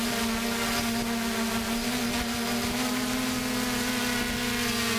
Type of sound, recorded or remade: recorded